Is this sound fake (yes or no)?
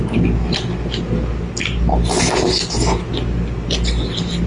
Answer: no